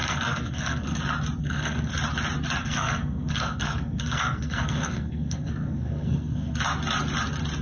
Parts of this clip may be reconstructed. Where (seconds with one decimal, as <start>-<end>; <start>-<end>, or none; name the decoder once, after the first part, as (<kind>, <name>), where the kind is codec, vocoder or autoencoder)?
0.0-1.0 (codec, SNAC); 1.4-1.9; 2.6-6.6